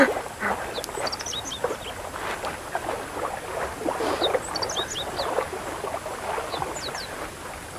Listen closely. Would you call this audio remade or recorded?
recorded